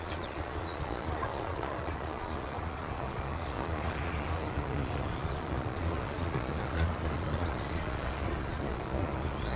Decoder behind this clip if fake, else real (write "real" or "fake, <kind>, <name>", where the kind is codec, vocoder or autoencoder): fake, vocoder, Vocos